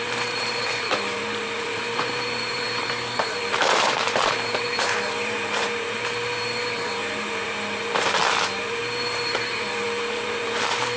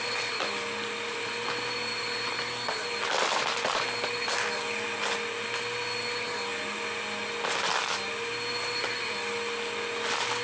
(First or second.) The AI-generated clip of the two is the first